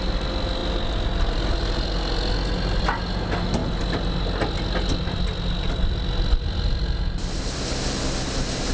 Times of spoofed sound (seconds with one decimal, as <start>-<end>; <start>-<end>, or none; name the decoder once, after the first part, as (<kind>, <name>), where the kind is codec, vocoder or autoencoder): none